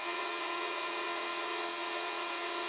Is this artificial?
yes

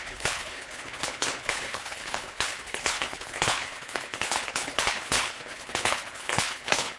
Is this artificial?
yes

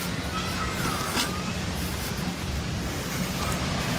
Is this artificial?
no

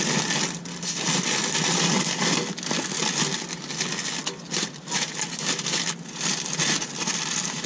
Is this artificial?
no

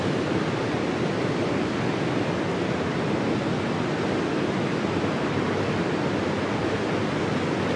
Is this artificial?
no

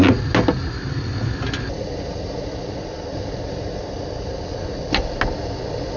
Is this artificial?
no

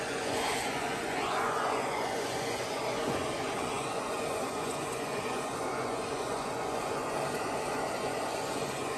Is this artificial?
yes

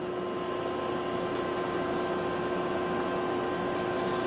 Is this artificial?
no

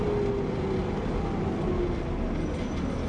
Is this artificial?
no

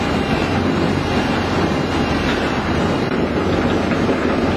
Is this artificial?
no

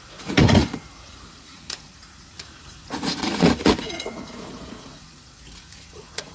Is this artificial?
yes